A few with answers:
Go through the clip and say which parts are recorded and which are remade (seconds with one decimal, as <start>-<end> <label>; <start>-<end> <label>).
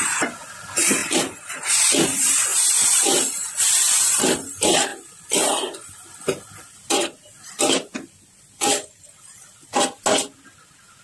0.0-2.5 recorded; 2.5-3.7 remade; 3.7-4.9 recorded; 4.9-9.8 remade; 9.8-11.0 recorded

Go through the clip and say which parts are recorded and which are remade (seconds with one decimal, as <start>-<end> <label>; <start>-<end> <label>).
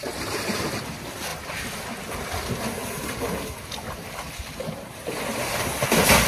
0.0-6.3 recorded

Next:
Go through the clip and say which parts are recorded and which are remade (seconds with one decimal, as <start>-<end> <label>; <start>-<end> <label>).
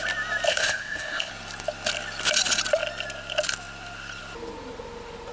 0.0-0.5 recorded; 0.5-1.3 remade; 1.3-5.3 recorded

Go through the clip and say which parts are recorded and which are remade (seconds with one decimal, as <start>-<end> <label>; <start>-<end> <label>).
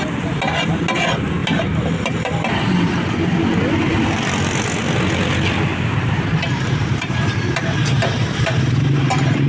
0.0-1.4 recorded; 1.4-3.0 remade; 3.0-5.7 recorded; 5.7-9.5 remade